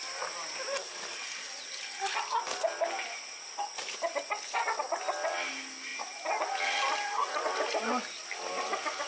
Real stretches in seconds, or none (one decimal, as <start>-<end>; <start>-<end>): 0.0-9.1

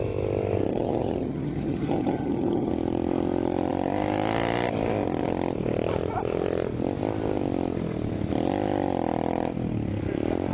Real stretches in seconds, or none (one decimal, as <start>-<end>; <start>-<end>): 0.0-0.7; 2.7-10.5

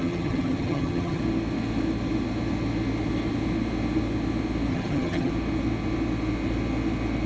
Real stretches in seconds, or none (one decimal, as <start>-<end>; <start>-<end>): 1.2-4.7; 5.3-7.3

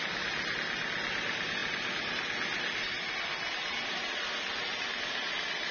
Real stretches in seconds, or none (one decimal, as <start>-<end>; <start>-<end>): 0.0-5.7

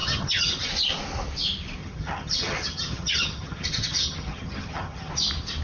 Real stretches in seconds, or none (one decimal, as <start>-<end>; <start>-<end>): 0.7-1.8; 5.1-5.6

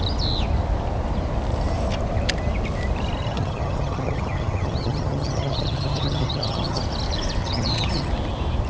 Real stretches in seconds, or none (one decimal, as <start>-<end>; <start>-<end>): 0.0-3.2; 6.8-7.4; 8.1-8.7

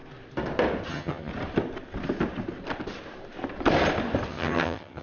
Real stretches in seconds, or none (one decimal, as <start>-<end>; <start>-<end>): 0.0-0.9; 1.3-4.3